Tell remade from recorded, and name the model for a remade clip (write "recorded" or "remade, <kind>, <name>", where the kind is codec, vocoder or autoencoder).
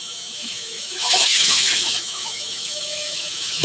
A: remade, autoencoder, DAC-VAE